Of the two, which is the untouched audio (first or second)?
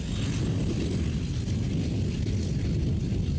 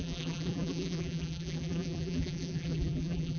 first